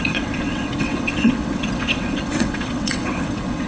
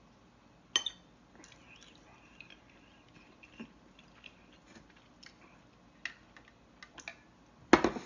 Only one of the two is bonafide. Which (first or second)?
second